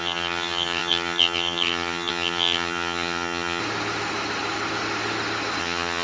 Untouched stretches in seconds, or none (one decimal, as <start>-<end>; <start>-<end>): 3.6-5.6